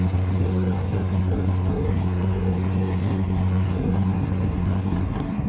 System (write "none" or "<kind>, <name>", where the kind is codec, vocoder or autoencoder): codec, SNAC